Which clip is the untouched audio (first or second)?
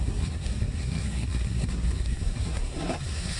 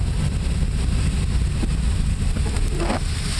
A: second